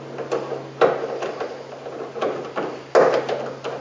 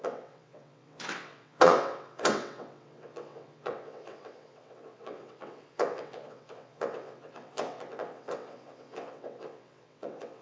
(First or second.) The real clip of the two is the first